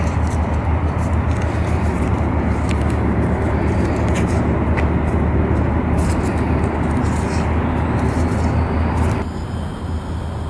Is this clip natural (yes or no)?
yes